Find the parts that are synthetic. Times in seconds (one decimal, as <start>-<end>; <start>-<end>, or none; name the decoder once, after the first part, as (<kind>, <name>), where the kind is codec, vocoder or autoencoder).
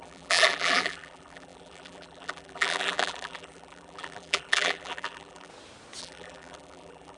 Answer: 0.0-5.5 (vocoder, BigVGAN v2); 6.0-7.2